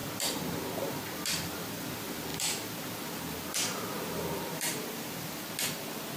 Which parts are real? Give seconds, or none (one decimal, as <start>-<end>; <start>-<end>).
none